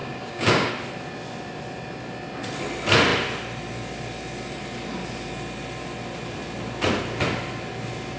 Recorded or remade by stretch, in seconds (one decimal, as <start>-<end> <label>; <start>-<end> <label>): 0.0-0.7 remade; 0.7-8.2 recorded